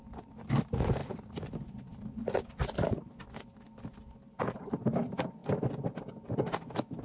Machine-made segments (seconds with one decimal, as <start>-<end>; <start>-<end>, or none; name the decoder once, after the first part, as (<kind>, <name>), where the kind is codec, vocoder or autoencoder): 1.0-1.5 (vocoder, BigVGAN v2); 1.9-3.1; 5.4-6.1